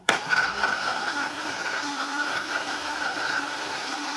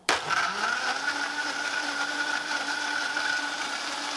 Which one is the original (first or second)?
second